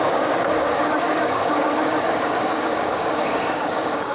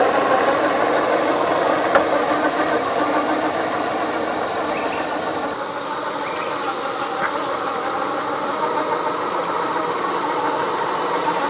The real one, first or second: second